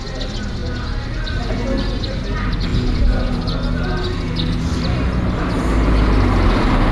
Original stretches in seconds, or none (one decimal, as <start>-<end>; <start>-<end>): 0.0-6.9